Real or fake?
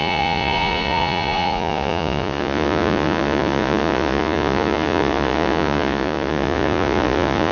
fake